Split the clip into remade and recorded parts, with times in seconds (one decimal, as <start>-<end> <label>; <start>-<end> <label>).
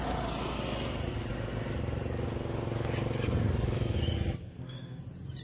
0.0-4.4 recorded; 4.4-5.0 remade; 5.0-5.4 recorded